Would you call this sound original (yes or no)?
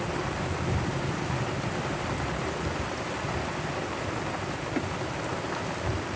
yes